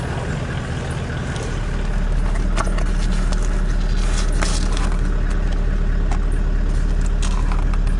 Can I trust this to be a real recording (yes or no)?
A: yes